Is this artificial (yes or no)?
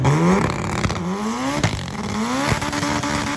no